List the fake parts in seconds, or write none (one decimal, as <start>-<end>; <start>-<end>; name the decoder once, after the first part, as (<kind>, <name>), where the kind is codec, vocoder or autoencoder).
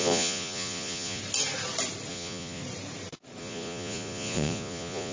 0.0-1.2 (vocoder, Vocos); 2.1-2.6; 3.4-5.1